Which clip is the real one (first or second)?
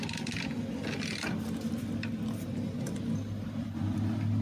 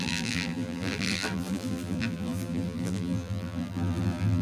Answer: first